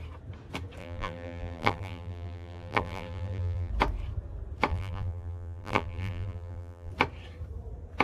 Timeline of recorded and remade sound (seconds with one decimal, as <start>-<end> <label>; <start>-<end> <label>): 0.0-0.8 recorded; 0.8-3.7 remade; 3.7-4.7 recorded; 4.7-6.9 remade; 6.9-8.0 recorded